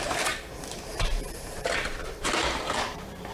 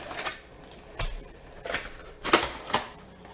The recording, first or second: second